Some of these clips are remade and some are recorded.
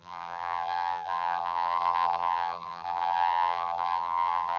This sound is remade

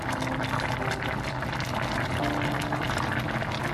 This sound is recorded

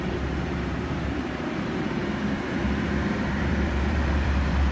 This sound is remade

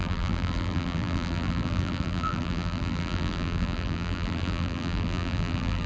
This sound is remade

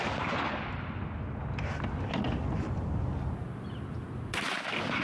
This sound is recorded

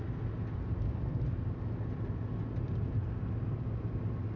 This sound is recorded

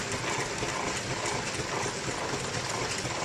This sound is recorded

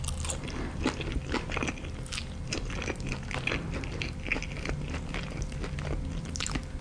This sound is recorded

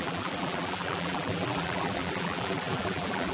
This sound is remade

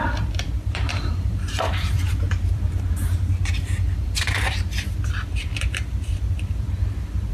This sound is remade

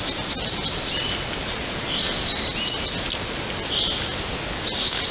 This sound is recorded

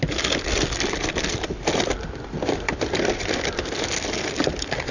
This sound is recorded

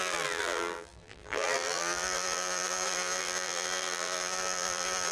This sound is remade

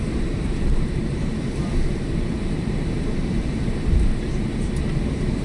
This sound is remade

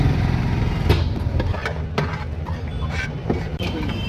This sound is remade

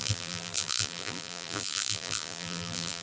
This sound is remade